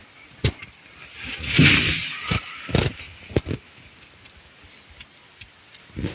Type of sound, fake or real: real